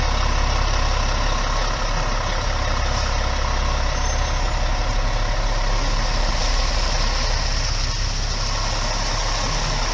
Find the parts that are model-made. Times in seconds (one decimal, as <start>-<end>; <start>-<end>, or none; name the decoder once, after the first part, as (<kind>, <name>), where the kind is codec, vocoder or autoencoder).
none